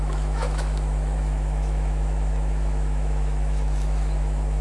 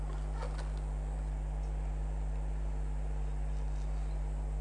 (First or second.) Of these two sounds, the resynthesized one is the first